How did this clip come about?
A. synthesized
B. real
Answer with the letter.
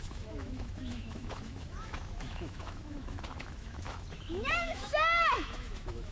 A